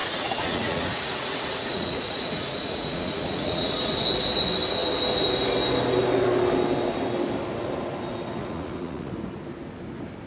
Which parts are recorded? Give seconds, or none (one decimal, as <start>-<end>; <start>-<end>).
3.8-8.4; 9.1-10.3

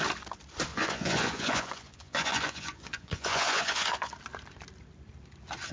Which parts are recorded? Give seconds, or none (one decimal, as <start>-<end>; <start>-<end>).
0.0-0.7; 4.1-5.7

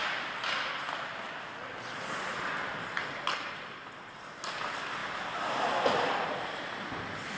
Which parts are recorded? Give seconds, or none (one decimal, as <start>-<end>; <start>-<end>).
0.0-7.4

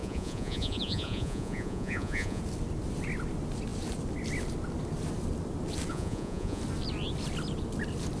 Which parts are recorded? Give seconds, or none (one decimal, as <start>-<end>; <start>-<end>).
2.4-5.9; 6.6-8.2

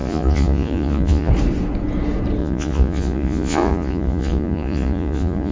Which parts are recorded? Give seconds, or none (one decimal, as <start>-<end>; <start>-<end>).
1.3-2.4

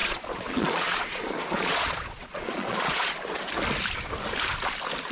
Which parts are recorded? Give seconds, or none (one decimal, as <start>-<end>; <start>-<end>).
3.1-5.1

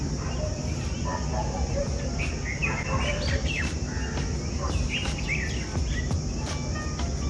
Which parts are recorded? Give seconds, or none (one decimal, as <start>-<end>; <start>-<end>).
0.0-7.3

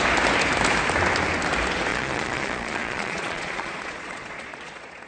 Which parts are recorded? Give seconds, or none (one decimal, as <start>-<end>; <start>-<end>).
0.0-1.9